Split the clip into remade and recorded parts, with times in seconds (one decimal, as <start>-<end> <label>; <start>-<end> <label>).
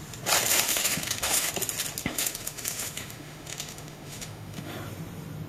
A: 0.0-0.5 recorded; 0.5-1.5 remade; 1.5-2.0 recorded; 2.0-4.7 remade; 4.7-5.5 recorded